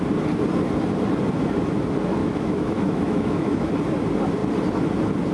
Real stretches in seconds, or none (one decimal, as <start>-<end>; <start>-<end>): 0.0-2.2; 3.7-5.3